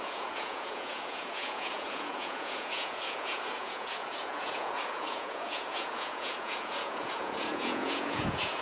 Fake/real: fake